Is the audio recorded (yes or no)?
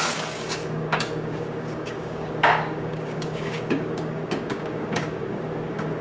no